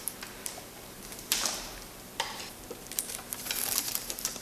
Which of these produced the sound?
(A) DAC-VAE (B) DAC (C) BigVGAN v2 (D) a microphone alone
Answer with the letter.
C